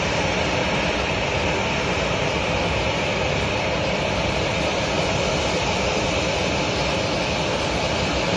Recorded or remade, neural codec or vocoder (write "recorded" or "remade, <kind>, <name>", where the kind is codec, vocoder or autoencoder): recorded